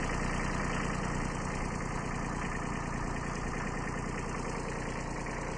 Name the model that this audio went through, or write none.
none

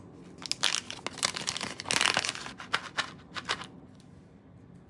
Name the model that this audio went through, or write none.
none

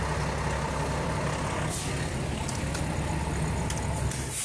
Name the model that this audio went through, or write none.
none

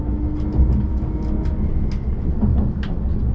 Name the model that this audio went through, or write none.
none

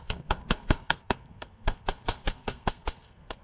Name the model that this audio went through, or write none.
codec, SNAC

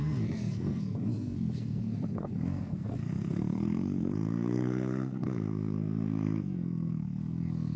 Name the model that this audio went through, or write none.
codec, SNAC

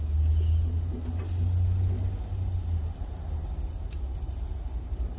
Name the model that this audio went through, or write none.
none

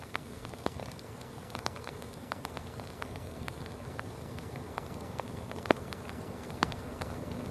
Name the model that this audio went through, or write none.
codec, SNAC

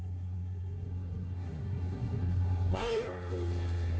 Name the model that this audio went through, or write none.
codec, SNAC